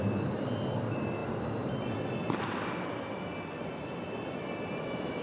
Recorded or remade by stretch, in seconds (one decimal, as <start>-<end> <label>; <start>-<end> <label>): 0.0-1.2 remade; 1.2-1.9 recorded; 1.9-5.2 remade